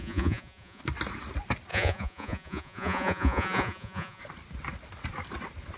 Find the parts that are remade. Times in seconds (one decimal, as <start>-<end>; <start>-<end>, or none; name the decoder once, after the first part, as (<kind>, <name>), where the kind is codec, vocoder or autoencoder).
0.0-0.8 (vocoder, Vocos); 1.7-4.2